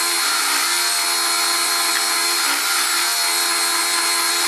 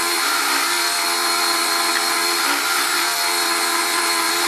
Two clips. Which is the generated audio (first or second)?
second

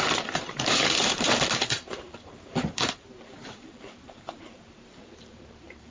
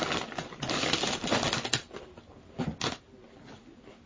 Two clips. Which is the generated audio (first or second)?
first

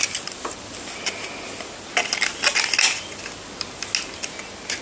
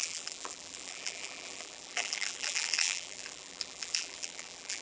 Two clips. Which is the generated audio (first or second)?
second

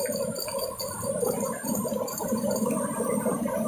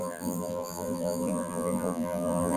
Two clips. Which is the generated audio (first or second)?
second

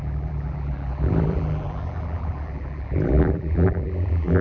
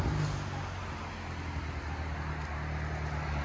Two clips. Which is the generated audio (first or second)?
first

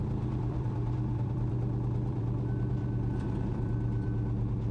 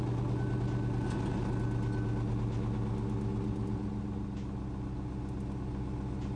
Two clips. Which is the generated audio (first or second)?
first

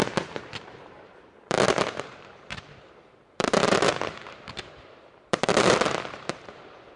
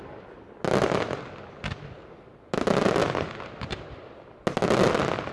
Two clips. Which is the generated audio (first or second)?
first